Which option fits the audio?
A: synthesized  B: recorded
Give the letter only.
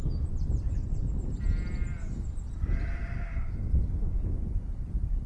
B